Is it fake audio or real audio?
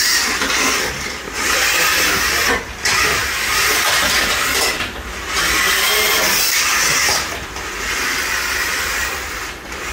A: real